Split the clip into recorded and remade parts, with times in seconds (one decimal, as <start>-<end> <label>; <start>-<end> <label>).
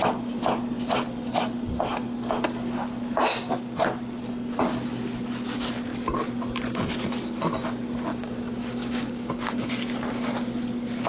0.0-8.1 recorded; 8.1-9.7 remade; 9.7-11.1 recorded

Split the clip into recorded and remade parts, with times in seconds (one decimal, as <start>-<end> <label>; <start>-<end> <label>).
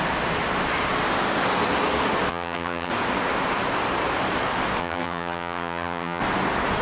0.0-2.3 recorded; 2.3-2.9 remade; 2.9-4.8 recorded; 4.8-6.2 remade; 6.2-6.8 recorded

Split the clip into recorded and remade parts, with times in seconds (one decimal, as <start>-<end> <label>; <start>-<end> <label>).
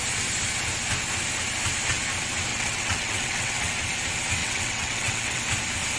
0.0-2.5 recorded; 2.5-3.7 remade; 3.7-4.4 recorded; 4.4-5.4 remade; 5.4-6.0 recorded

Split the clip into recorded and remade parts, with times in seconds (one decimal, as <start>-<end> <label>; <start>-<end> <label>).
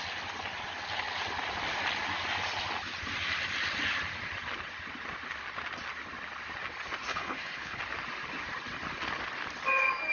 0.0-7.1 recorded; 7.1-7.8 remade; 7.8-10.1 recorded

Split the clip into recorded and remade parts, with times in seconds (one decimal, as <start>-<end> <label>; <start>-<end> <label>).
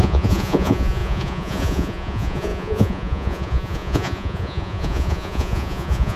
0.0-6.2 remade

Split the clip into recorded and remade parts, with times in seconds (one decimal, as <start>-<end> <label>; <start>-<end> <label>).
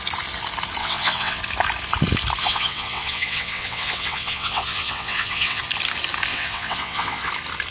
0.0-0.8 recorded; 0.8-1.4 remade; 1.4-2.4 recorded; 2.4-5.6 remade; 5.6-6.3 recorded; 6.3-7.3 remade; 7.3-7.7 recorded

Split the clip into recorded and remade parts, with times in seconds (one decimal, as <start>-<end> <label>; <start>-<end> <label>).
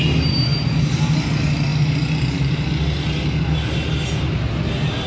0.0-5.1 recorded